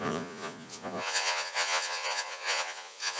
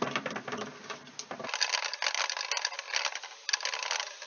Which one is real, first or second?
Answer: second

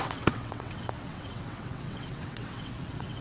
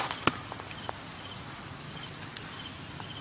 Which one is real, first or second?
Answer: second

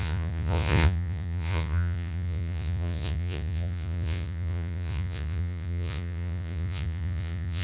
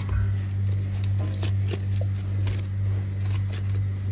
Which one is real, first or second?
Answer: second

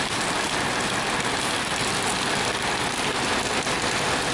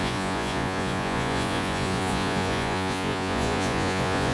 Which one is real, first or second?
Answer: first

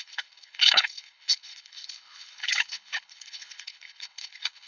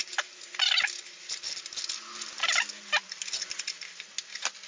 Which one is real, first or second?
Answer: second